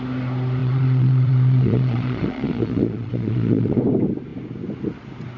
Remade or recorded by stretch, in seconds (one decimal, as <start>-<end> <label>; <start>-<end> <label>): 0.0-0.6 recorded; 0.6-3.8 remade; 3.8-5.4 recorded